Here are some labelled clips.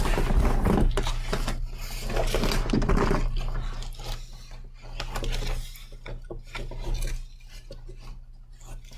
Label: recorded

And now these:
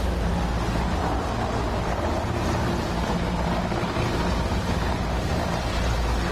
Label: recorded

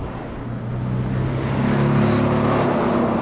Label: recorded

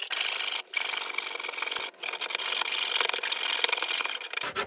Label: recorded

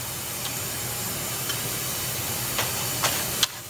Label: recorded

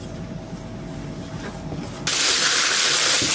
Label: recorded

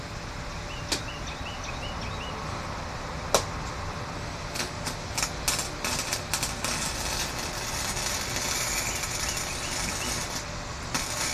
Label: recorded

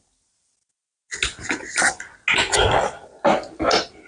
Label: recorded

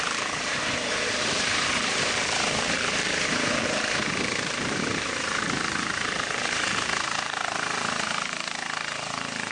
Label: remade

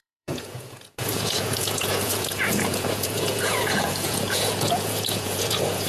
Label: remade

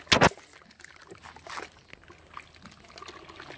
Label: recorded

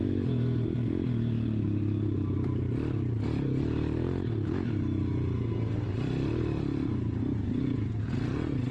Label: recorded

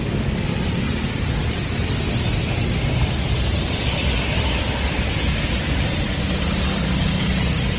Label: recorded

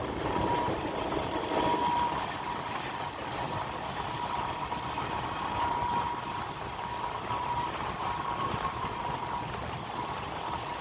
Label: remade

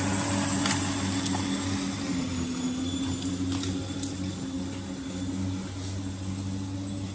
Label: recorded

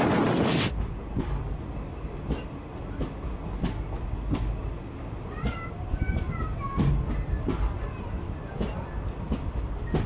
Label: recorded